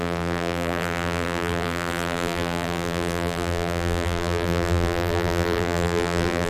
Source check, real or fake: fake